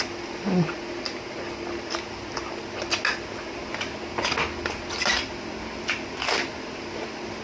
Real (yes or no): yes